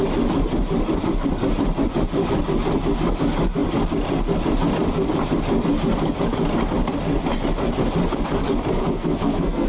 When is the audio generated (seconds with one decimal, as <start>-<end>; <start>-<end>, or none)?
8.8-9.7